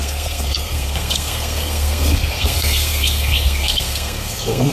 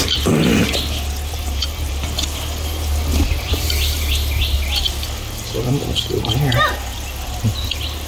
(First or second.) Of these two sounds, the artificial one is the first